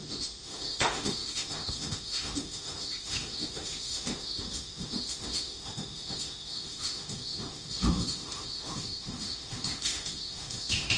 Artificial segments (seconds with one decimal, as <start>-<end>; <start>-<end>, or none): 0.0-11.0